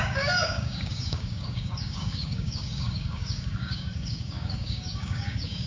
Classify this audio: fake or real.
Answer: fake